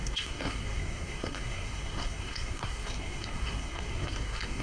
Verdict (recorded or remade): remade